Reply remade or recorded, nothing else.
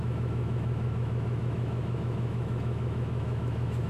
remade